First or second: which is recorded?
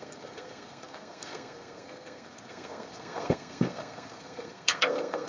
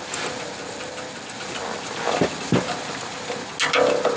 second